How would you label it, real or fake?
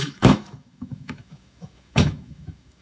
fake